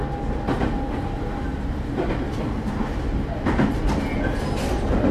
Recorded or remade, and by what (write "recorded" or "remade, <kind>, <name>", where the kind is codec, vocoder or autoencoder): recorded